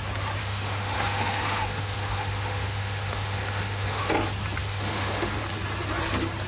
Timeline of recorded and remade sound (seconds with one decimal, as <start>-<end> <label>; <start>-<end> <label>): 0.0-0.4 recorded; 0.4-4.1 remade; 4.1-4.6 recorded; 4.6-5.4 remade; 5.4-6.5 recorded